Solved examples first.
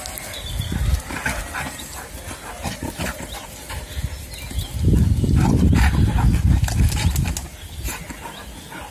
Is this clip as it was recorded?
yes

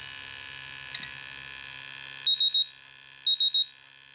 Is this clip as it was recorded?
yes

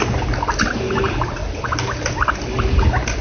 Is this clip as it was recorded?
yes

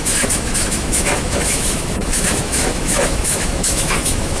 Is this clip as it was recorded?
no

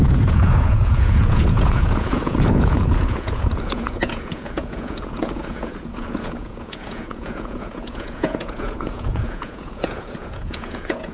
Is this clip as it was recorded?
no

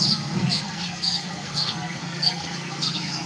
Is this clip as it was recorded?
no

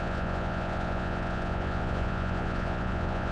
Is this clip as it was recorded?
no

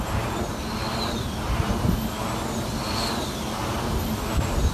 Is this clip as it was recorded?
yes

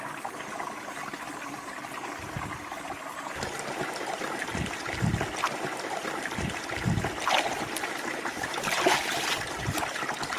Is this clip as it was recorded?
yes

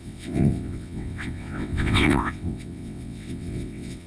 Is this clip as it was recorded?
no